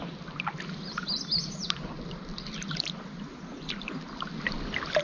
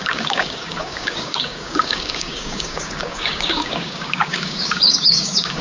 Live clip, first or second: first